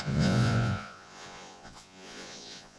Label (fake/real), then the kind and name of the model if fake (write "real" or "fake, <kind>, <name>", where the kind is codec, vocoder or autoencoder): fake, vocoder, Vocos